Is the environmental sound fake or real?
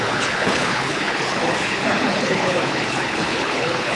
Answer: fake